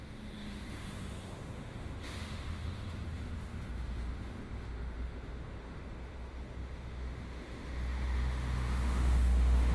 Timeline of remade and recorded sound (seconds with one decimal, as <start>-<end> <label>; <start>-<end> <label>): 0.0-9.7 remade